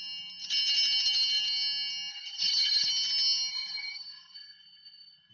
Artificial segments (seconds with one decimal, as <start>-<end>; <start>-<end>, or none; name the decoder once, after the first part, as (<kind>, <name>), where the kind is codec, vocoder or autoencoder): 2.1-2.9 (codec, HILCodec); 3.5-5.3